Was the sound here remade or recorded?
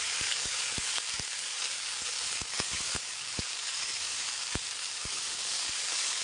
remade